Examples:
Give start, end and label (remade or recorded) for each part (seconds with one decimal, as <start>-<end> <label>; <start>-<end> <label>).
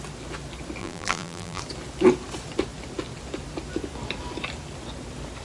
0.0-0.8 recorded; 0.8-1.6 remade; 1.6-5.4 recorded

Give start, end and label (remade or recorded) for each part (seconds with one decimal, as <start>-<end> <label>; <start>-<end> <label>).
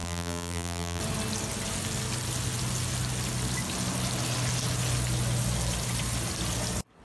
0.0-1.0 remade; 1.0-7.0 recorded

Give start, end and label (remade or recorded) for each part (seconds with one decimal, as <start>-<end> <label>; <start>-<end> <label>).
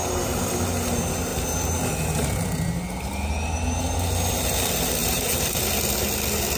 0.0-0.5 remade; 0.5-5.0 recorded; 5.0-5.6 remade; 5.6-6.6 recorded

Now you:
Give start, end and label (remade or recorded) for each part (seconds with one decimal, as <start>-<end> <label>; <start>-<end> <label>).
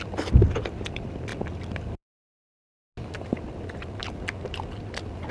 0.0-5.3 recorded